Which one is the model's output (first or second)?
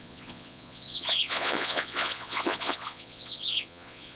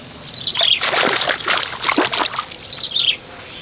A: first